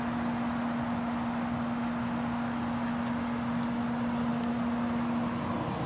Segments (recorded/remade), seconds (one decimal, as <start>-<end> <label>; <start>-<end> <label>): 0.0-5.9 recorded